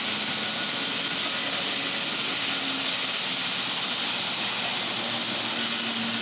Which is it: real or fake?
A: real